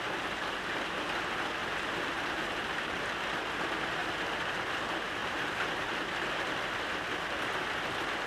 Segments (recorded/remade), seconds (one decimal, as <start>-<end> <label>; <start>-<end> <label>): 0.0-1.6 recorded; 1.6-2.5 remade; 2.5-8.3 recorded